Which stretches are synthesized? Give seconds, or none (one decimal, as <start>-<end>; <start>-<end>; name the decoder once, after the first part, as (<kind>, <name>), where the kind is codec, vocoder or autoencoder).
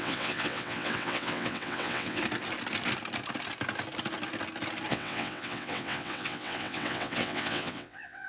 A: 0.0-2.2 (vocoder, WaveNeXt); 4.9-8.3